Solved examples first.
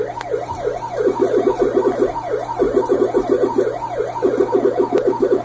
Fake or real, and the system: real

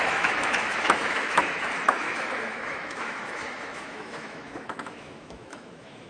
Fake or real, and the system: fake, autoencoder, DAC-VAE